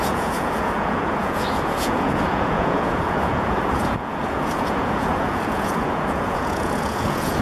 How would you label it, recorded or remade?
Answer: remade